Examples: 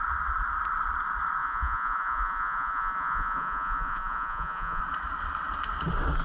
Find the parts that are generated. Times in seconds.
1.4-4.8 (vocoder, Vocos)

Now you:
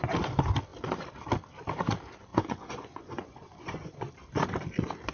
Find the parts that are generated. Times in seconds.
2.3-4.1 (vocoder, Vocos)

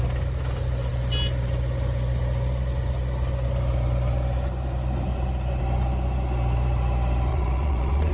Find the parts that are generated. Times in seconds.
7.3-8.1 (vocoder, Vocos)

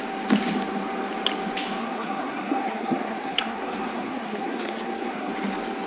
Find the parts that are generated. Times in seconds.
1.8-5.3 (codec, SNAC)

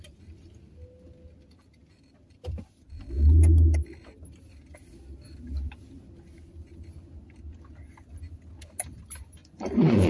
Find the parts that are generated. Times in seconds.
9.4-10.1 (vocoder, Vocos)

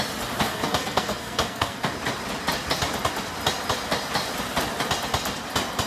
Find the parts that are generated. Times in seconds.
0.4-1.9 (codec, SNAC)

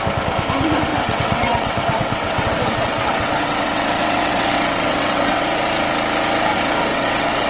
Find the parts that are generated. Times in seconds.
0.9-5.4 (vocoder, WaveNeXt); 6.9-7.5